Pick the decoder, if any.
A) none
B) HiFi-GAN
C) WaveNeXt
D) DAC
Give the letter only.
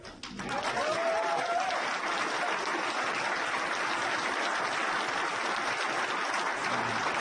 A